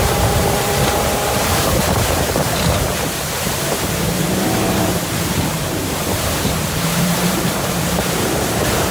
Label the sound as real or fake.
fake